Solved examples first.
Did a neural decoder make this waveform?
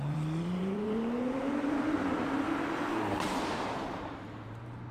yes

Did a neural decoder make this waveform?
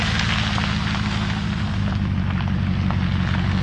no